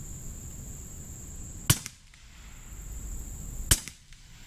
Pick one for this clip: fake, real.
real